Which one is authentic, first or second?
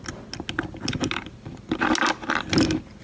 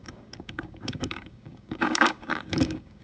first